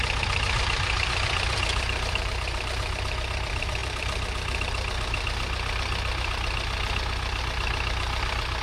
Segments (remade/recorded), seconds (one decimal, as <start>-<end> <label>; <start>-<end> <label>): 0.0-0.6 recorded; 0.6-2.8 remade; 2.8-8.6 recorded